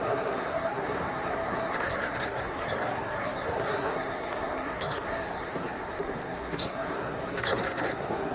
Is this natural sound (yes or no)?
no